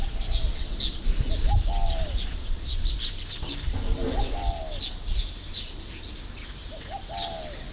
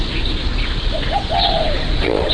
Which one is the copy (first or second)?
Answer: second